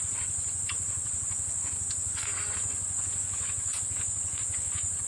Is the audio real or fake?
fake